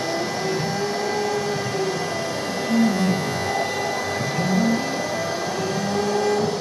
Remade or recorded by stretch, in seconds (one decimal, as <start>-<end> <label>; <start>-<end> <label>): 0.0-2.9 recorded; 2.9-3.5 remade; 3.5-6.6 recorded

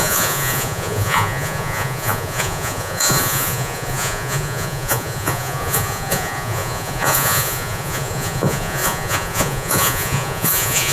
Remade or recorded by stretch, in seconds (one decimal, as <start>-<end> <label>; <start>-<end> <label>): 0.0-10.9 remade

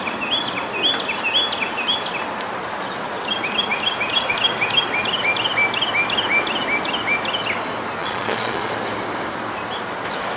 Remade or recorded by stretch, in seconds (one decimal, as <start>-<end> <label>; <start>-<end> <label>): 0.0-8.0 recorded; 8.0-8.7 remade; 8.7-10.4 recorded

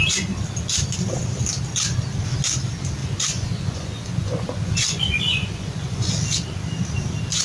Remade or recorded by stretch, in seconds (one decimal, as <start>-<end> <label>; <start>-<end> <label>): 0.0-3.0 recorded; 3.0-6.1 remade; 6.1-7.4 recorded

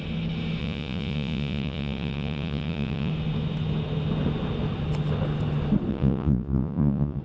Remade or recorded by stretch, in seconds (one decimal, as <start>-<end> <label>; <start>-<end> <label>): 0.0-0.6 recorded; 0.6-3.1 remade; 3.1-5.9 recorded; 5.9-7.2 remade

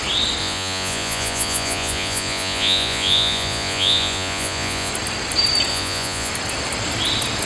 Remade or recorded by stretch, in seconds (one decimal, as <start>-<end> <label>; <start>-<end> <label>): 0.0-0.4 recorded; 0.4-4.9 remade; 4.9-5.7 recorded; 5.7-6.3 remade; 6.3-7.5 recorded

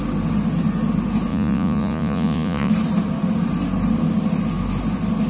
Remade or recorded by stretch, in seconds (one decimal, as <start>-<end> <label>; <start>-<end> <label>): 0.0-1.3 recorded; 1.3-2.7 remade; 2.7-5.3 recorded

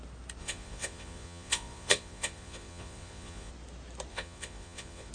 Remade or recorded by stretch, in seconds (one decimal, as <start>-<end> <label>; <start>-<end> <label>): 0.0-0.4 recorded; 0.4-3.5 remade; 3.5-4.1 recorded; 4.1-5.1 remade